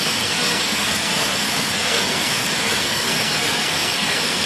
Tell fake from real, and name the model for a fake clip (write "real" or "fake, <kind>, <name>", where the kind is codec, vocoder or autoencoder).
fake, codec, SNAC